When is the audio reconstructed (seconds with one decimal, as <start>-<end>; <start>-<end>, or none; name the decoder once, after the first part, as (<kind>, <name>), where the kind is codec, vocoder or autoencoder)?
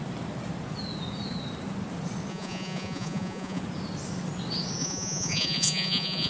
2.3-3.6 (vocoder, Vocos); 4.8-6.3